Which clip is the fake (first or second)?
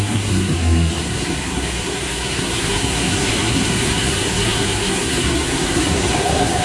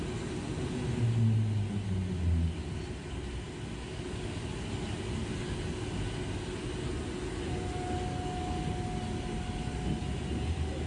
first